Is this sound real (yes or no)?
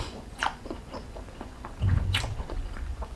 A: no